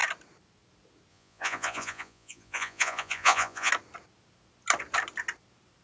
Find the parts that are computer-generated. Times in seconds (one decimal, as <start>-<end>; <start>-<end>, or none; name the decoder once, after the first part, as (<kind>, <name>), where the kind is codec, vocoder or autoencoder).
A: 1.1-3.7 (vocoder, Vocos)